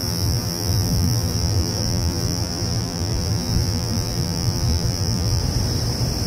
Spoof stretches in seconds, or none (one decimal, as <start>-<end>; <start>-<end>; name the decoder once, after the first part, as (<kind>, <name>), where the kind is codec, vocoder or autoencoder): 0.0-5.4 (vocoder, BigVGAN v2)